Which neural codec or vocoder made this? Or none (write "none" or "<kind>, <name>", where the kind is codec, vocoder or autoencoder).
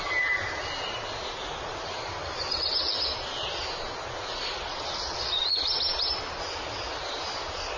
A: none